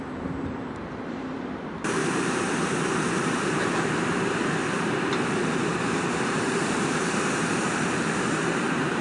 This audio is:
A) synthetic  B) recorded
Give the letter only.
A